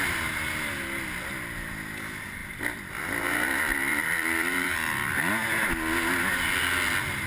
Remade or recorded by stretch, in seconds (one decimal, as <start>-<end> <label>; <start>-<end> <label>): 0.0-2.4 recorded; 2.4-2.9 remade; 2.9-3.9 recorded; 3.9-5.3 remade; 5.3-7.3 recorded